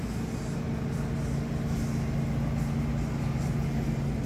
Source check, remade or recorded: recorded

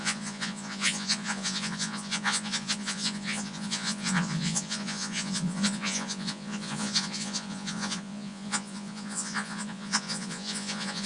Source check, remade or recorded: remade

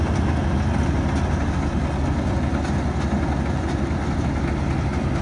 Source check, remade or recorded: recorded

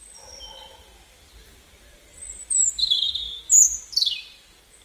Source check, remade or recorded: recorded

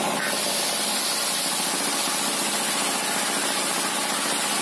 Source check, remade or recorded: recorded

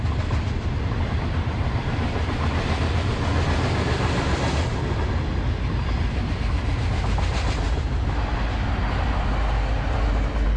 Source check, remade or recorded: recorded